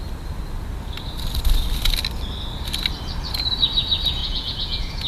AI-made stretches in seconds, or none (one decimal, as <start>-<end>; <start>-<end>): 4.2-5.1